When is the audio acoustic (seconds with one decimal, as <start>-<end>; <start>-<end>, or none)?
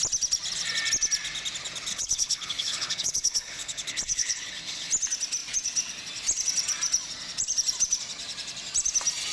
0.0-1.9; 4.9-9.3